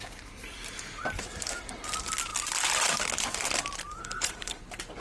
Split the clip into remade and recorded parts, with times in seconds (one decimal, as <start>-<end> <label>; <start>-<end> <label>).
0.0-4.0 recorded; 4.0-4.6 remade; 4.6-5.0 recorded